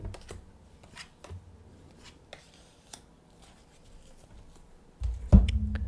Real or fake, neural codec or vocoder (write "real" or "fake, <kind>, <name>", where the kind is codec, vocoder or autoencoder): real